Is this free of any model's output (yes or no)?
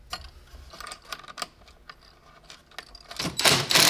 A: yes